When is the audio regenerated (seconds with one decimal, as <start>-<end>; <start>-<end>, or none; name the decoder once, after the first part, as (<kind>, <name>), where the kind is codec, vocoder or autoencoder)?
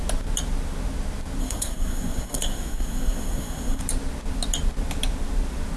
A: 1.4-3.8 (codec, SNAC)